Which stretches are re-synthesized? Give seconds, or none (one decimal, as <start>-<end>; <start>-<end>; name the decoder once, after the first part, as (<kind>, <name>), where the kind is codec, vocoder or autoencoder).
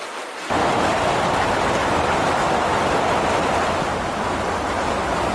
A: 1.8-5.3 (vocoder, BigVGAN v2)